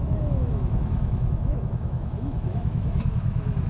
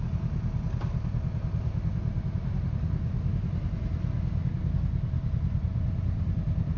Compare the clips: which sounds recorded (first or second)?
second